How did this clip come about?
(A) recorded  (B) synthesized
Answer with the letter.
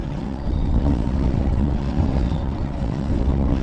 B